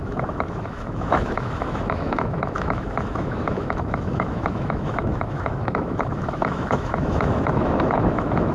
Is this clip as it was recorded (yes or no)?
no